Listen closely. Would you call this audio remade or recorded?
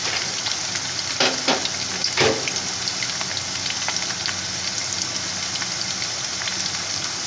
recorded